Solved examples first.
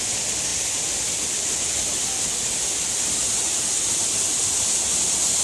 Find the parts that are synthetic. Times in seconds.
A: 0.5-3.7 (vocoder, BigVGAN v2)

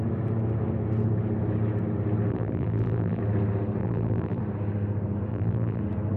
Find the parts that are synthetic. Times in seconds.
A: 2.3-3.2 (vocoder, BigVGAN v2); 3.8-4.4; 5.3-5.8

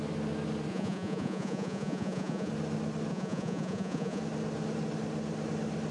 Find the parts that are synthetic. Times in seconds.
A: 0.7-2.5 (vocoder, Vocos); 3.1-4.2

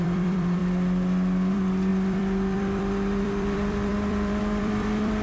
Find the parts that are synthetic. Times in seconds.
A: 0.0-0.6 (vocoder, BigVGAN v2); 1.5-5.2